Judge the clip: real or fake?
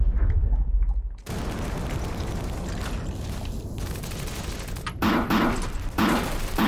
real